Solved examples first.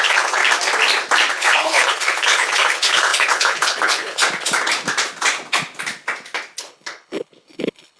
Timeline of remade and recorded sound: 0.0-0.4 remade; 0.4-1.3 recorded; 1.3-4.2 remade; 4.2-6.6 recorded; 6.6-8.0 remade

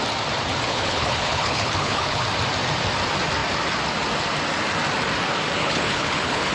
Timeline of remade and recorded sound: 0.0-0.7 recorded; 0.7-2.2 remade; 2.2-5.6 recorded; 5.6-6.5 remade

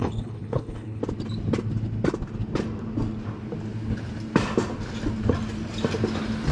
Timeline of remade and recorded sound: 0.0-1.0 remade; 1.0-6.5 recorded